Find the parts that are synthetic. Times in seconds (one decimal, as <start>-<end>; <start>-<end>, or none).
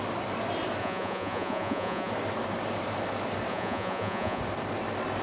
0.8-2.1; 3.5-4.4